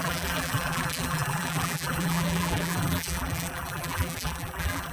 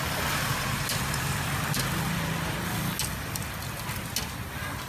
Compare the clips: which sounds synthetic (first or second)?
first